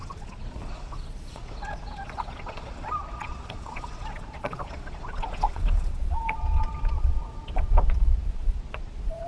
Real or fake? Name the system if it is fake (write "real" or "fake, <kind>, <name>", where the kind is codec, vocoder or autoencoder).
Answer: fake, vocoder, Vocos